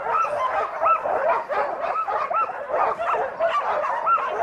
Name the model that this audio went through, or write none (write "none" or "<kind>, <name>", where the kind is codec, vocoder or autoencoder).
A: none